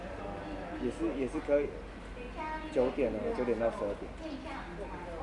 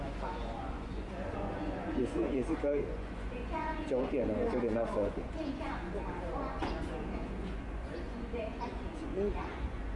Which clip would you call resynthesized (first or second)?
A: second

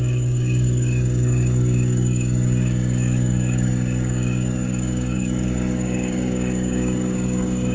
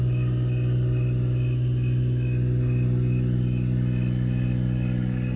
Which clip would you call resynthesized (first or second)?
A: first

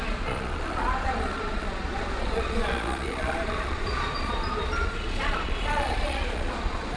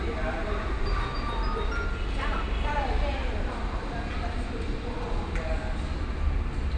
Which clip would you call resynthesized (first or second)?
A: first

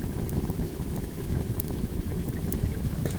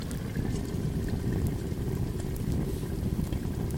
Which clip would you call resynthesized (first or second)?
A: first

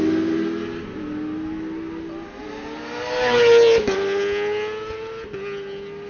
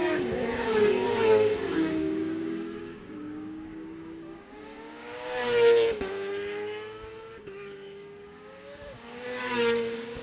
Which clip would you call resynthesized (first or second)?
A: second